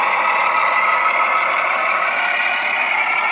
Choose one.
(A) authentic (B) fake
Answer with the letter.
A